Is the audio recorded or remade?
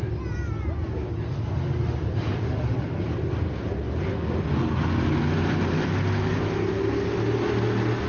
recorded